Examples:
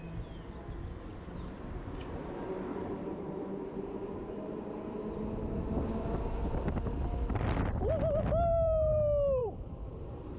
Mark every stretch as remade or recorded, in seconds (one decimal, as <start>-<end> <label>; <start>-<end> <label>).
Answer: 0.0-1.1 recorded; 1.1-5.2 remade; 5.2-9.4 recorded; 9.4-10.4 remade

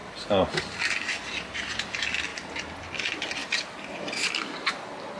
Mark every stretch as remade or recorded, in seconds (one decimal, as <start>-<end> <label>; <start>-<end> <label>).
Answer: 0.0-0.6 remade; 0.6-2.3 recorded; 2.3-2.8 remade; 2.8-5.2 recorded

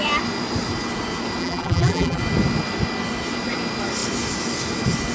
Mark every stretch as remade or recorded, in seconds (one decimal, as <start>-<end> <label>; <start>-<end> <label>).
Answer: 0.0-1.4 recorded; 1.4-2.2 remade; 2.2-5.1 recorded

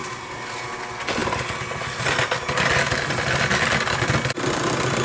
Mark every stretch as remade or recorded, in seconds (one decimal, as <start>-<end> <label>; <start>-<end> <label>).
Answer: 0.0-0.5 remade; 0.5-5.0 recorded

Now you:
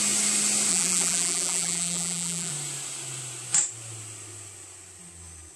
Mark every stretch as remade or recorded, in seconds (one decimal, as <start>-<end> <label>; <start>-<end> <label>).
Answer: 0.0-0.7 recorded; 0.7-2.5 remade; 2.5-5.6 recorded

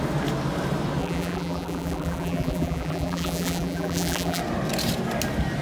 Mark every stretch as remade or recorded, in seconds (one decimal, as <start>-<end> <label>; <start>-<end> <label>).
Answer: 0.0-1.0 recorded; 1.0-4.4 remade; 4.4-5.6 recorded

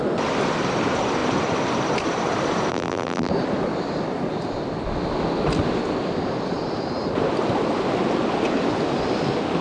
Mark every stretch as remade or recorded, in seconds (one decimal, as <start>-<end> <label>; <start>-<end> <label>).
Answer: 0.0-2.7 recorded; 2.7-3.3 remade; 3.3-9.6 recorded

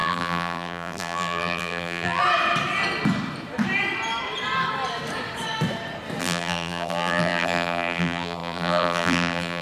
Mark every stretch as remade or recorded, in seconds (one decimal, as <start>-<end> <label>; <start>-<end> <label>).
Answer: 0.0-2.2 remade; 2.2-6.2 recorded; 6.2-9.6 remade